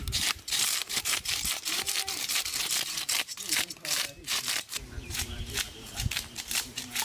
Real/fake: fake